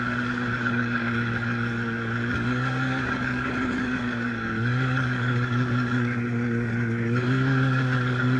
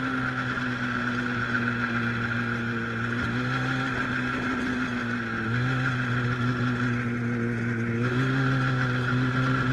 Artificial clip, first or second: first